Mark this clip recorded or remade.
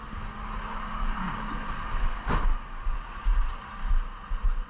recorded